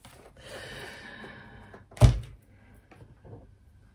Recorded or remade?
recorded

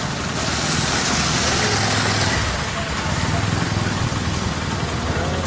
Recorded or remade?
recorded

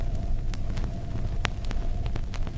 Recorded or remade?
recorded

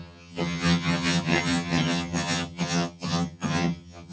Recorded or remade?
remade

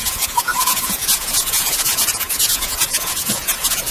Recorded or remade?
remade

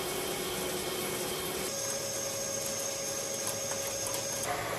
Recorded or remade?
recorded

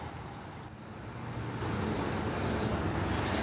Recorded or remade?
recorded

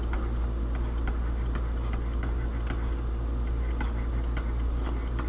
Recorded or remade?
recorded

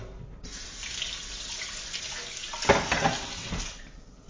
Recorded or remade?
recorded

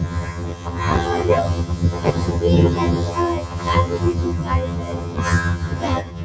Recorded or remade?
remade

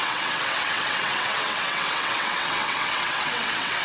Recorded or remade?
remade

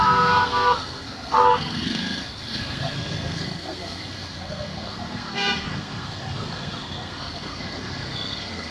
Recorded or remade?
remade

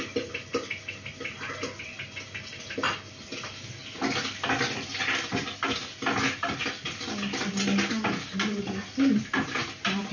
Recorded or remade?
recorded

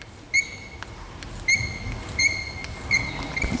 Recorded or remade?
recorded